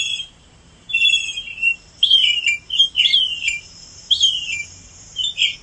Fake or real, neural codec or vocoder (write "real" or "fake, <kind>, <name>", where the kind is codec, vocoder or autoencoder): fake, vocoder, BigVGAN v2